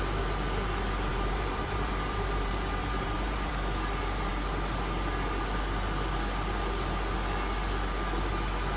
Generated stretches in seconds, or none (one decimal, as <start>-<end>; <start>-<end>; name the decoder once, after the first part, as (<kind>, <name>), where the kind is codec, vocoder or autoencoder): 1.1-3.5 (vocoder, BigVGAN v2)